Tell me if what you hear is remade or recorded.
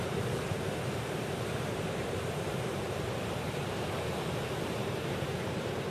remade